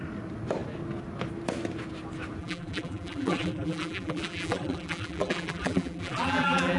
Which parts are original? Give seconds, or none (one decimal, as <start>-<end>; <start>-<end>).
0.0-2.4